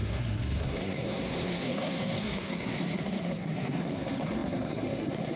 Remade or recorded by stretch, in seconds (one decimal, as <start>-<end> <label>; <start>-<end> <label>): 0.0-5.4 remade